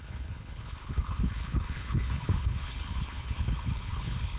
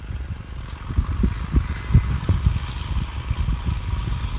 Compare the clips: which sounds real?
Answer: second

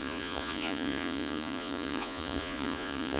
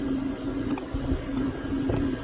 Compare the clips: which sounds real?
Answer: second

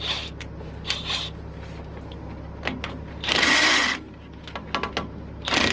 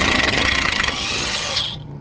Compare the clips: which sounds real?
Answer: first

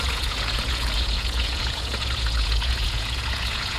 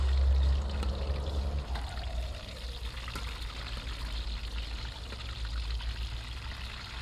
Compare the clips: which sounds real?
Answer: second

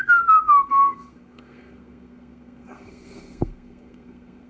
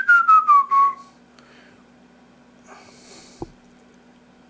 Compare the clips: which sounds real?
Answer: second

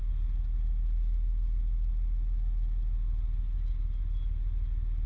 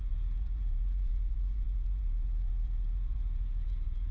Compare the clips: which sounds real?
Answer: first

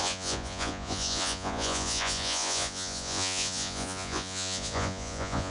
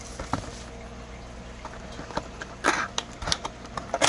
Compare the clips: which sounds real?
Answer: second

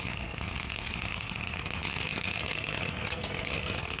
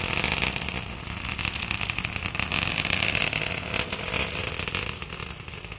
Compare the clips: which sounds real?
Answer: second